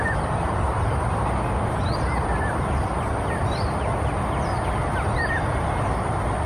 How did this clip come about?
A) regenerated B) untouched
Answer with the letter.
B